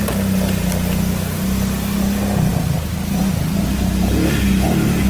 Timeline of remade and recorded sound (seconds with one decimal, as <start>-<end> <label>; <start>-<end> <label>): 0.0-5.1 recorded